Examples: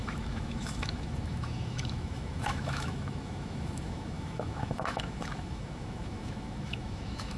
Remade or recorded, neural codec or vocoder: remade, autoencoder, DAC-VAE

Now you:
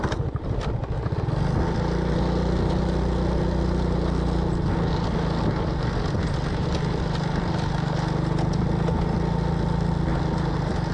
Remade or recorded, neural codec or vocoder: recorded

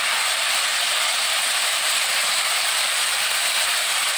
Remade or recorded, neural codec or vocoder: remade, vocoder, BigVGAN v2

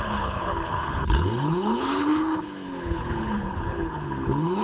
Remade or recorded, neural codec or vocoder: remade, codec, HILCodec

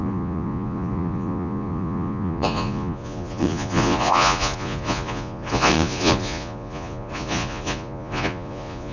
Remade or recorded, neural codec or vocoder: remade, vocoder, Vocos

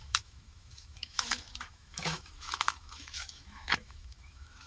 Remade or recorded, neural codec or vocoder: remade, autoencoder, DAC-VAE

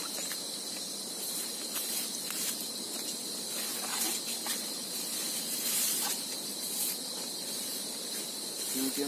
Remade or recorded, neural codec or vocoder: remade, vocoder, BigVGAN v2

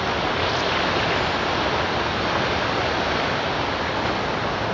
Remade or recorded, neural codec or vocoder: recorded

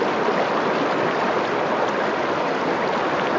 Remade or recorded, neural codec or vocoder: recorded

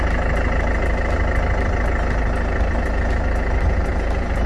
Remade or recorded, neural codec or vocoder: recorded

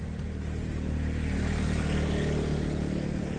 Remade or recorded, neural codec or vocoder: recorded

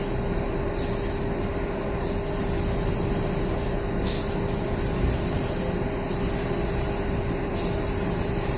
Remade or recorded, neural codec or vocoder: recorded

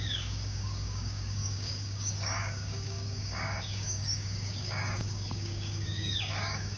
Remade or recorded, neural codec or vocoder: remade, codec, DAC